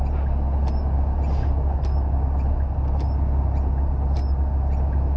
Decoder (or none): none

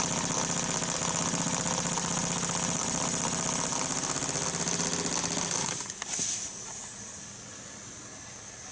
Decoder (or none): none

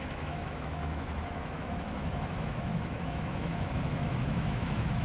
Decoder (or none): autoencoder, DAC-VAE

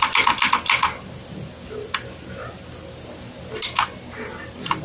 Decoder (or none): none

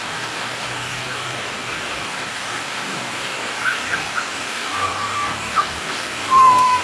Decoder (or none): codec, DAC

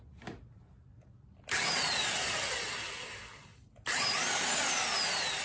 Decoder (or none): none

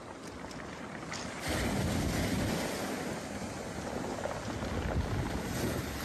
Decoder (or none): none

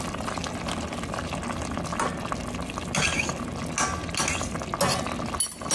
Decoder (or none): none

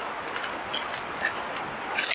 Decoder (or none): none